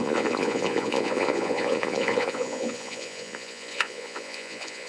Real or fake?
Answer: fake